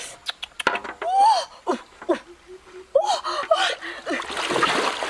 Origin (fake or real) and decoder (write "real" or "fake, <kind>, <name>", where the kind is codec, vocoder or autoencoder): real